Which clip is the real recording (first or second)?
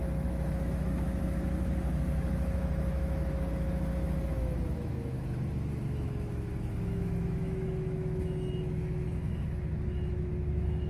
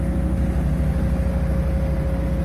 second